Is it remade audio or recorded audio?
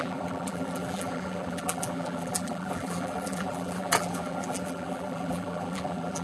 remade